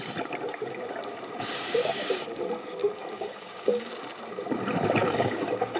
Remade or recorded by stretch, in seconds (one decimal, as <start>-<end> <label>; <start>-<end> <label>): 0.0-1.8 recorded; 1.8-2.4 remade; 2.4-2.8 recorded; 2.8-3.9 remade; 3.9-5.0 recorded; 5.0-5.8 remade